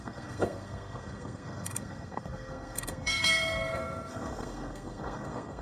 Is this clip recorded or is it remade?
remade